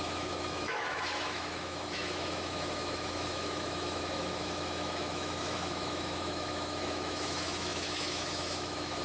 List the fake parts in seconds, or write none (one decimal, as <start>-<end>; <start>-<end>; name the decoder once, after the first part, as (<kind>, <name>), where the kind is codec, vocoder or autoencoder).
0.0-9.0 (autoencoder, DAC-VAE)